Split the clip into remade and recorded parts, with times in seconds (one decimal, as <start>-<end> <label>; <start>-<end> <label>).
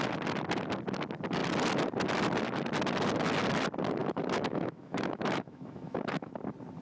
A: 0.0-4.0 recorded; 4.0-6.3 remade; 6.3-6.8 recorded